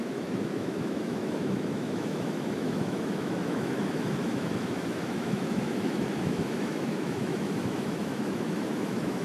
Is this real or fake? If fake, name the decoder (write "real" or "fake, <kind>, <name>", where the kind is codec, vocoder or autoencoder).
fake, autoencoder, DAC-VAE